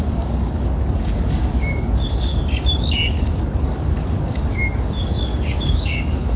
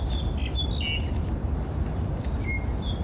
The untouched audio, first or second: second